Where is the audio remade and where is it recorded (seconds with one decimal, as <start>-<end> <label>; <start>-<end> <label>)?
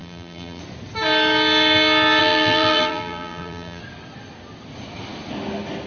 0.0-0.6 remade; 0.6-2.2 recorded; 2.2-3.8 remade; 3.8-5.9 recorded